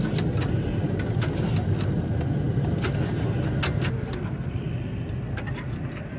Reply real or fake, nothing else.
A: real